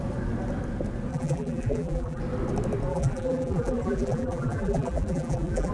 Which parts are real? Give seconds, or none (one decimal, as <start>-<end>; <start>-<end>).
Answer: 0.0-1.1; 2.2-2.9